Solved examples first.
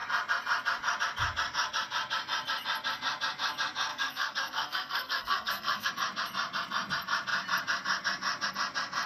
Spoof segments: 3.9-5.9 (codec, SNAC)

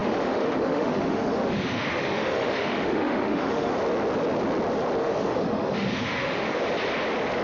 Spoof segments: 0.0-3.7 (autoencoder, DAC-VAE); 5.0-6.6

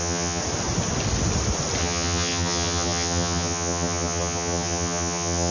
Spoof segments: 0.0-0.4 (vocoder, HiFi-GAN); 1.8-5.5

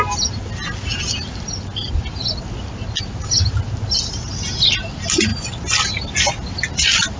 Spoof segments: none

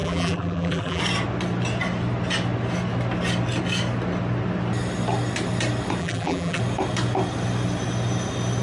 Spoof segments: 0.0-1.0 (vocoder, BigVGAN v2); 6.0-6.6

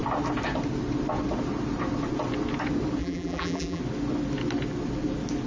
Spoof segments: 3.0-3.8 (vocoder, BigVGAN v2)

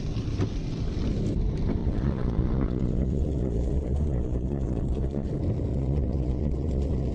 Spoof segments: 1.8-5.3 (vocoder, Vocos); 5.7-7.1

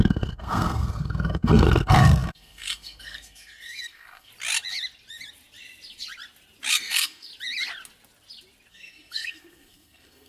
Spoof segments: 0.0-4.3 (codec, SNAC); 6.7-7.3; 8.7-10.3